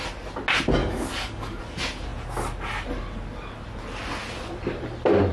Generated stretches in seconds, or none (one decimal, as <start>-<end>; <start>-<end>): 0.8-1.6